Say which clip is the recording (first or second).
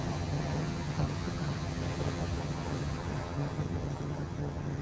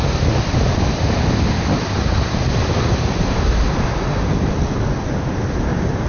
second